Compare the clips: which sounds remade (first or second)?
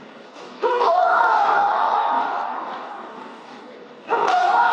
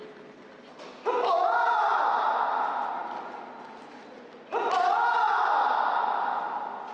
first